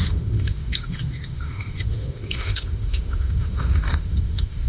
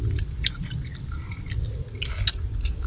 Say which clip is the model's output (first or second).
first